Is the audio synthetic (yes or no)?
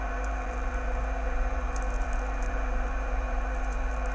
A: yes